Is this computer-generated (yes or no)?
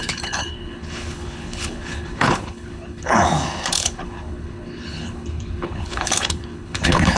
yes